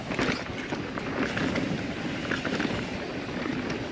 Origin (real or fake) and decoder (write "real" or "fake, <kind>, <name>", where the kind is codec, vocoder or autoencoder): real